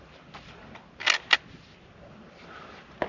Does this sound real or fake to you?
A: real